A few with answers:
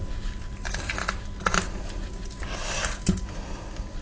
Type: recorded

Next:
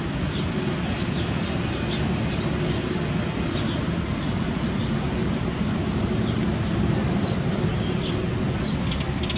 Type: recorded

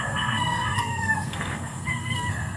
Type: remade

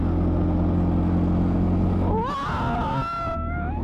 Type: recorded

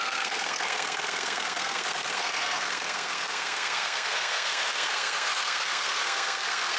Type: remade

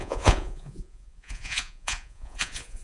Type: remade